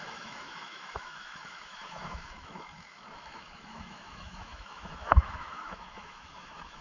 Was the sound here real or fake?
fake